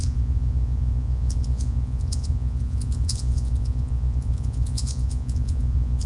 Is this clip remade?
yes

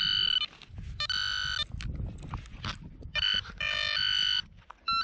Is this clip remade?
no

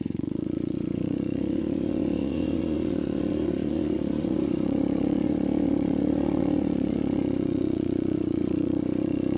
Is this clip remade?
yes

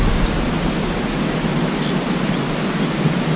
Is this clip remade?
no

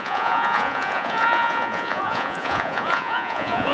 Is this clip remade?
yes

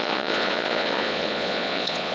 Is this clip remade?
yes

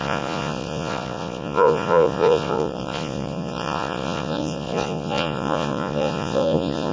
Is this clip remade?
yes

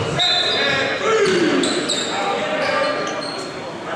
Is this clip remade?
no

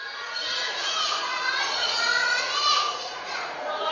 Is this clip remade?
yes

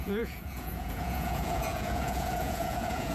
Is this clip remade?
yes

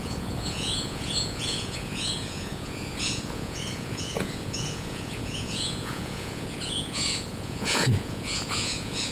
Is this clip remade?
yes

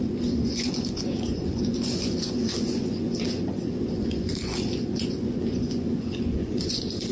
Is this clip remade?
yes